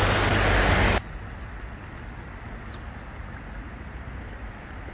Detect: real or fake real